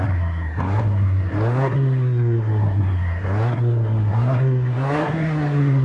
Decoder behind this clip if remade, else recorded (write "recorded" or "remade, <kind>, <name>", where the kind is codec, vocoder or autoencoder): remade, codec, SNAC